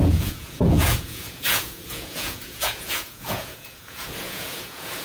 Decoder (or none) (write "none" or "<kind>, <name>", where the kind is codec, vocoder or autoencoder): vocoder, Vocos